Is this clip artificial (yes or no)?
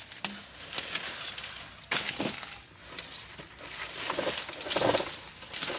no